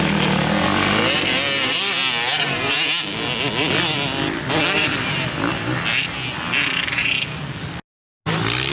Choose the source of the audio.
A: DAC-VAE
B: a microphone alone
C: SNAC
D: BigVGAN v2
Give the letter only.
B